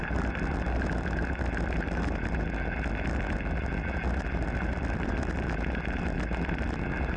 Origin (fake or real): real